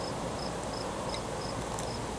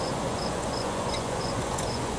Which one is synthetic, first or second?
second